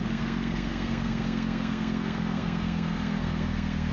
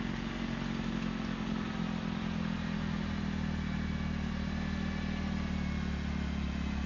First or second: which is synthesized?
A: first